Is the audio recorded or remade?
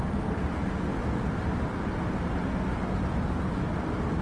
recorded